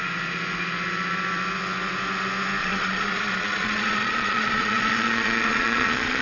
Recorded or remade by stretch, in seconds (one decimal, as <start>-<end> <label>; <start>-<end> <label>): 0.0-2.6 recorded; 2.6-6.2 remade